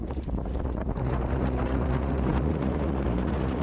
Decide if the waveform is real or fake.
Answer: fake